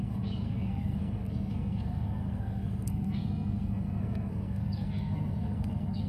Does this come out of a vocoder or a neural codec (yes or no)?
yes